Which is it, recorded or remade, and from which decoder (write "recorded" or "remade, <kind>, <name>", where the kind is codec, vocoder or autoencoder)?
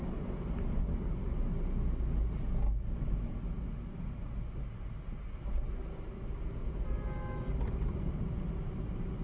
recorded